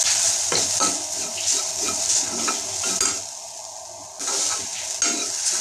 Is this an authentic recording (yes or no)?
yes